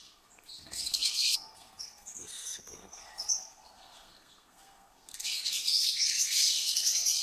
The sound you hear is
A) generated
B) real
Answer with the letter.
A